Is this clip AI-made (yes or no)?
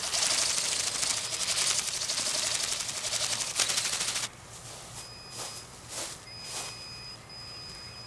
no